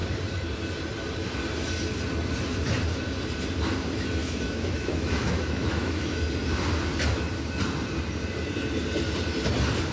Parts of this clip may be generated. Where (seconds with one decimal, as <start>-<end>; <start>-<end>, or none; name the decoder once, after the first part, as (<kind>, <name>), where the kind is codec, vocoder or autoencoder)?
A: 4.2-6.2 (autoencoder, DAC-VAE)